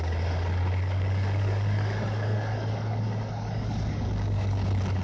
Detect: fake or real fake